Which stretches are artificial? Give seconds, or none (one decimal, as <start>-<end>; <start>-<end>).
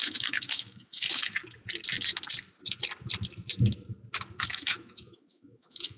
0.0-1.4; 4.5-6.0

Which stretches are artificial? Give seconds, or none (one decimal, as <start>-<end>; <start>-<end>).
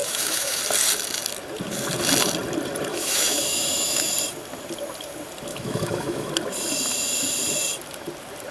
0.0-0.6; 2.9-4.1; 5.5-6.3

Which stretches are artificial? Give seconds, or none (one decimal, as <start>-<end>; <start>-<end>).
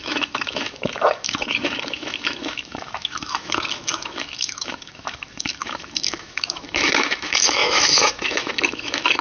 0.0-9.2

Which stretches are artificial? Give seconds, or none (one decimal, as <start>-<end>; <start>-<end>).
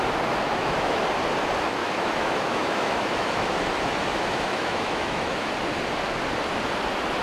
0.4-1.0; 1.8-5.5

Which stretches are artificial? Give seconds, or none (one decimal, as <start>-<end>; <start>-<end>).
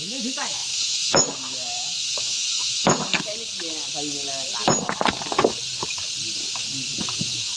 0.0-3.3; 7.0-7.6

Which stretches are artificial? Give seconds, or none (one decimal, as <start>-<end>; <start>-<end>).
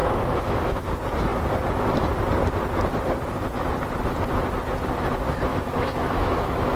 0.0-0.8; 5.5-6.8